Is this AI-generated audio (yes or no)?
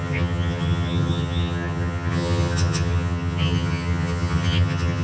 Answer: yes